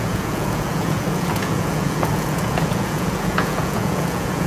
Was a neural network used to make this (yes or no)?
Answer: yes